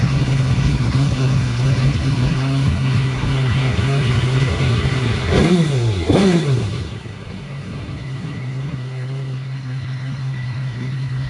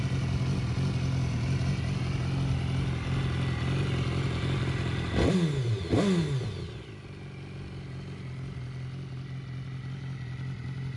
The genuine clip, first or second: second